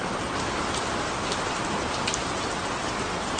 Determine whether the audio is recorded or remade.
recorded